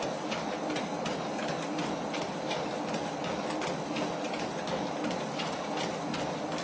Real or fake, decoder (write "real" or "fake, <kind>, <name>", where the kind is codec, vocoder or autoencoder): real